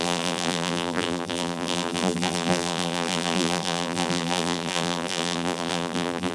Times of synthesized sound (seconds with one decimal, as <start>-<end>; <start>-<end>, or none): 0.0-6.3